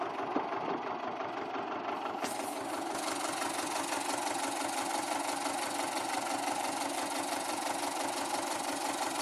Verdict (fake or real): real